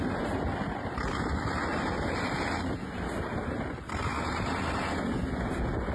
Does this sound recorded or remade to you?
recorded